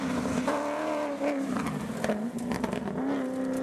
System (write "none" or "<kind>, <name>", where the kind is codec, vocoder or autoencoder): none